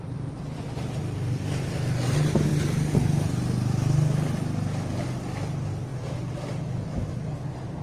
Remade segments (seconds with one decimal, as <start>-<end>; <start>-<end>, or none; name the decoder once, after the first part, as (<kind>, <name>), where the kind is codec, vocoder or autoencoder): 0.0-2.5 (vocoder, BigVGAN v2); 4.4-5.9

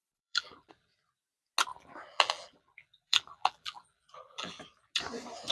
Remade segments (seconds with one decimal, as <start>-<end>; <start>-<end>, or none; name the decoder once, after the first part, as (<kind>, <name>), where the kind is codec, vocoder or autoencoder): 0.0-0.7 (vocoder, BigVGAN v2); 1.7-4.6

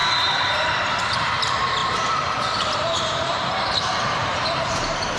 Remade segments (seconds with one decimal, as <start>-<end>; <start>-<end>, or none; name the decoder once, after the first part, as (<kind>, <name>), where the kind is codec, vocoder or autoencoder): 0.7-5.2 (vocoder, BigVGAN v2)

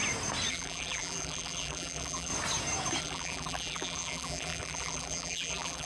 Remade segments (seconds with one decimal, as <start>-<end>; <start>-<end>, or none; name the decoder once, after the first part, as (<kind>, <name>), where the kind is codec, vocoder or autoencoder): 0.5-2.3 (vocoder, BigVGAN v2); 3.0-5.8

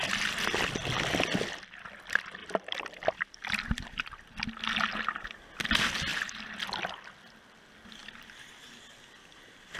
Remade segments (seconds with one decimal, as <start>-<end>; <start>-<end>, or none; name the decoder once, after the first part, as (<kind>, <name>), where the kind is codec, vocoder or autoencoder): 2.4-3.7 (vocoder, BigVGAN v2)